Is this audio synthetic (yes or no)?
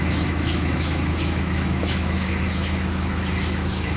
yes